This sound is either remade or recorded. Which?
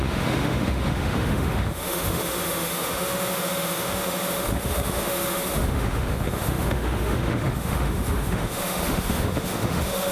remade